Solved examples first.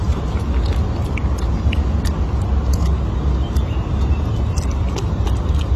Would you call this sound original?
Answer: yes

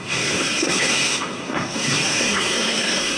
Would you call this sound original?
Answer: no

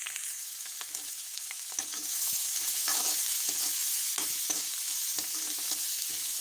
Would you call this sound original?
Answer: no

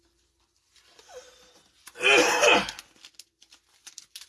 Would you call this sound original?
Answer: yes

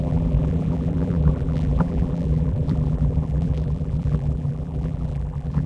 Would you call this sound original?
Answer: no